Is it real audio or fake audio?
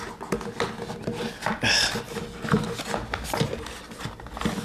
real